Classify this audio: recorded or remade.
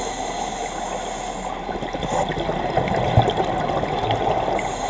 recorded